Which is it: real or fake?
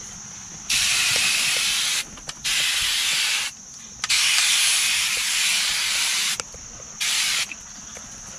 real